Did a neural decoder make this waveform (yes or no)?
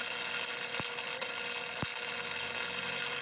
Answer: no